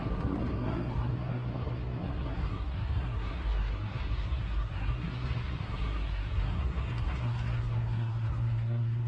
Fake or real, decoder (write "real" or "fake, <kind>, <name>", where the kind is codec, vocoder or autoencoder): fake, codec, SNAC